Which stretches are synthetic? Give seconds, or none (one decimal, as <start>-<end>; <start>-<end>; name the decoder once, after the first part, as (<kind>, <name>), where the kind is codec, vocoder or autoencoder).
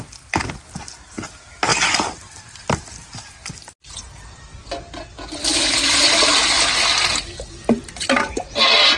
none